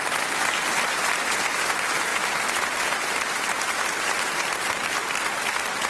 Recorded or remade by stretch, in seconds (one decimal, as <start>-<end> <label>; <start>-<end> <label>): 0.0-5.9 recorded